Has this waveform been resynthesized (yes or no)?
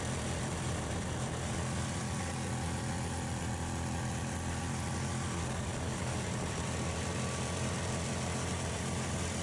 yes